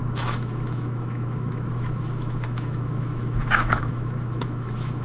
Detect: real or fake fake